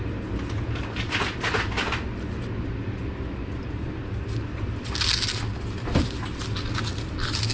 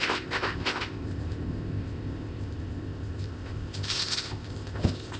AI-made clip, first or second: second